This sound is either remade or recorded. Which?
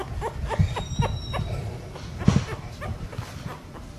remade